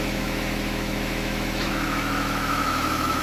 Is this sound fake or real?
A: fake